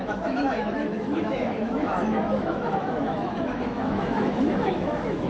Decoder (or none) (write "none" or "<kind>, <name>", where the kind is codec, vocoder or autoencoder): autoencoder, DAC-VAE